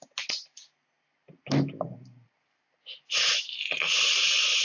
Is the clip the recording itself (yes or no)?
yes